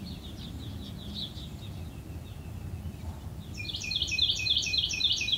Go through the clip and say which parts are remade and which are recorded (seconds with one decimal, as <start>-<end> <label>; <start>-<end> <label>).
0.0-0.8 remade; 0.8-3.7 recorded; 3.7-4.3 remade; 4.3-5.0 recorded; 5.0-5.4 remade